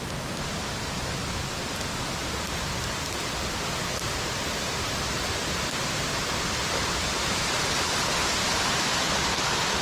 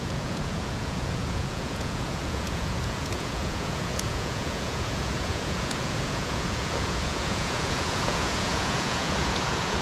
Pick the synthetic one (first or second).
second